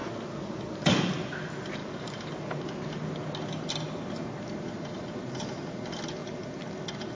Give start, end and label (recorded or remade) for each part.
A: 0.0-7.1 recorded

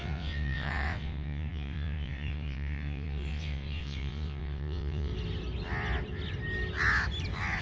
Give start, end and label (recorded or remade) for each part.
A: 0.0-5.1 remade; 5.1-7.6 recorded

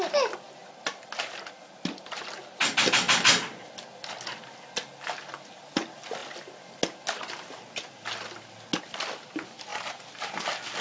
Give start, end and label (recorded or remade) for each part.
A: 0.0-10.8 recorded